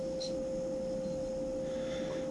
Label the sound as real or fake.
real